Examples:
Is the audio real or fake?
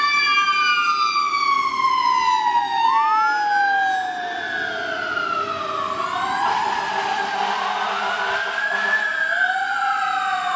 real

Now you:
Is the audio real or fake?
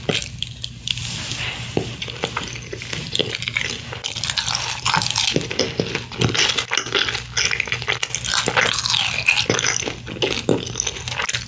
real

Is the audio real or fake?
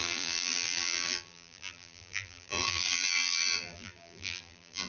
fake